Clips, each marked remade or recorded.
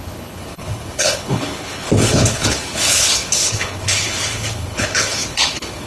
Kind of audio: remade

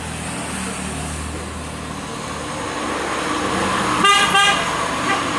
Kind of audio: recorded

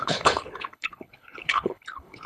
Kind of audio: remade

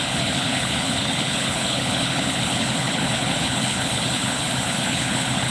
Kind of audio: remade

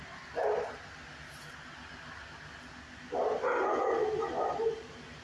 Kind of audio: recorded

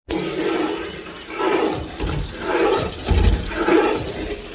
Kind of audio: recorded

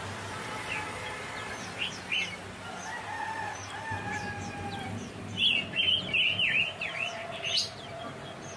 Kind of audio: recorded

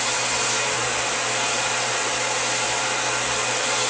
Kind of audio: recorded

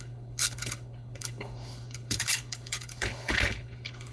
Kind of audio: remade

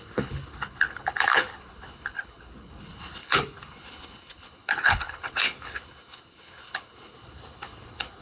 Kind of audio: remade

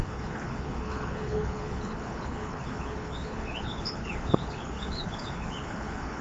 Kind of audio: remade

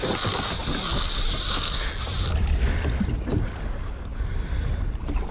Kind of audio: recorded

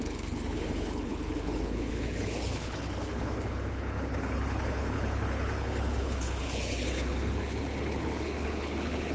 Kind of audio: remade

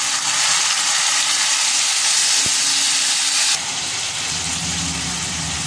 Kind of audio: recorded